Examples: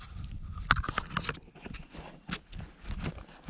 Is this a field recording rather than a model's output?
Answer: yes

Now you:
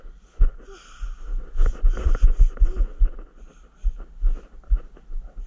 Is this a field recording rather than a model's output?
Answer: yes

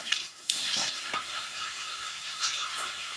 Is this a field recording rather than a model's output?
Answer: no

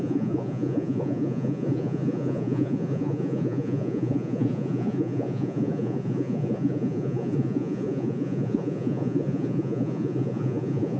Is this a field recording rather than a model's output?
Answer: no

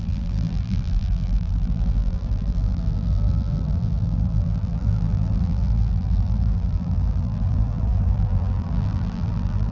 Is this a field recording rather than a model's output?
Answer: no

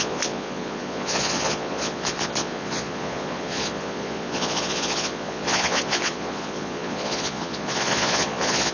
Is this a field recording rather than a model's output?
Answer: no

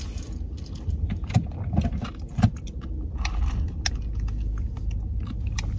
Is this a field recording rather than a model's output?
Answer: yes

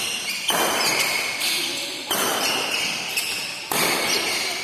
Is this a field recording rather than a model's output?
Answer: yes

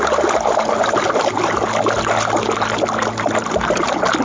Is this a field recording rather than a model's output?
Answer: yes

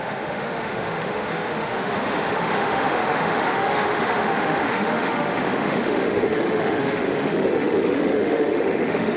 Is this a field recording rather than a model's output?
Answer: no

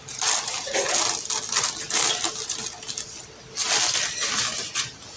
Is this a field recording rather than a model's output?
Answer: yes